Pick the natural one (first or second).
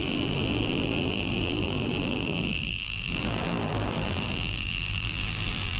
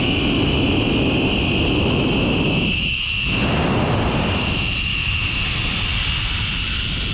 second